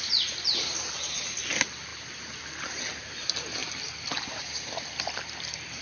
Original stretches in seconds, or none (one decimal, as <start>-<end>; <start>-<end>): 0.0-5.8